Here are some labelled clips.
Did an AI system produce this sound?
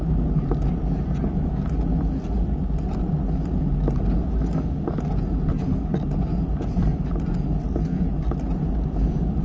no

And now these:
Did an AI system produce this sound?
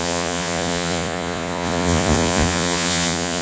yes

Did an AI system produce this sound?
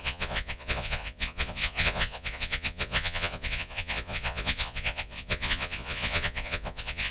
yes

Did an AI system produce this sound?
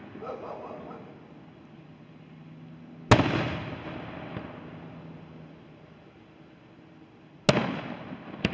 no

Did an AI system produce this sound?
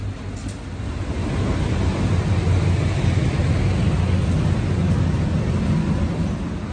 no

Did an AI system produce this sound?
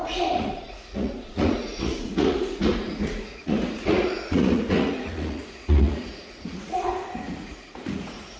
yes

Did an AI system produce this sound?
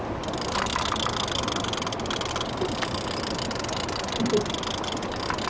no